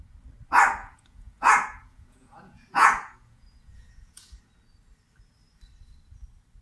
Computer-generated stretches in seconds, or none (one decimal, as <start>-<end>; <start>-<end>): 0.8-4.4